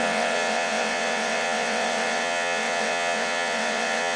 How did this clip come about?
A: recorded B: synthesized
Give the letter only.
B